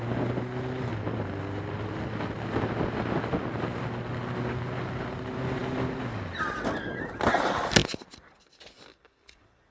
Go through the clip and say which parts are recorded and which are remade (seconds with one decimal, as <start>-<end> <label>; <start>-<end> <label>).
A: 0.0-9.7 recorded